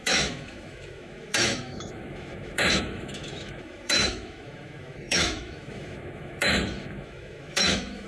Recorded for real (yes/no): no